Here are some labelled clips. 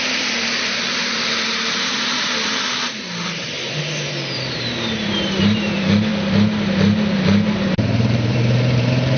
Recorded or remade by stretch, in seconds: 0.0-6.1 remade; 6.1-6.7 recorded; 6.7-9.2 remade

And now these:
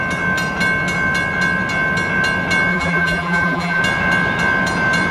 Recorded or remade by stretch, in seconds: 0.0-2.7 recorded; 2.7-3.8 remade; 3.8-5.1 recorded

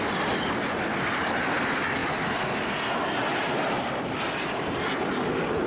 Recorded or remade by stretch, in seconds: 0.0-5.7 recorded